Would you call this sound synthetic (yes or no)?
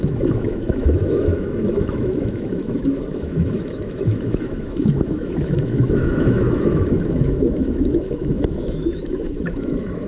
yes